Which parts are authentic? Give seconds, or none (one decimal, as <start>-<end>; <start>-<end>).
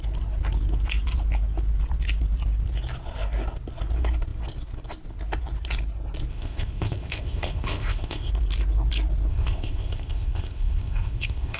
0.0-6.3; 8.3-9.3